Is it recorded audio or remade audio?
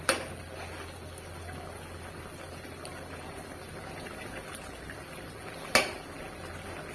recorded